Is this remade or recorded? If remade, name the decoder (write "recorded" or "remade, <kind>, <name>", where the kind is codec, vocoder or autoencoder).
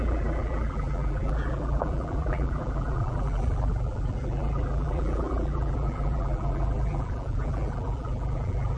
remade, vocoder, BigVGAN v2